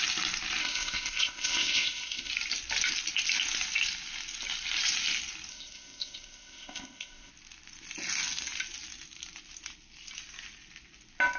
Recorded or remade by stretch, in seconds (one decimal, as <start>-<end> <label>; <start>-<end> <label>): 0.0-0.6 recorded; 0.6-2.3 remade; 2.3-5.5 recorded; 5.5-7.3 remade; 7.3-11.4 recorded